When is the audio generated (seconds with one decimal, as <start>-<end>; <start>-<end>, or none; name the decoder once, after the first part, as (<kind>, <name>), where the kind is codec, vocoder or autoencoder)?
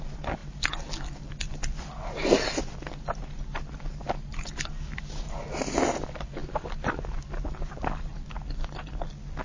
none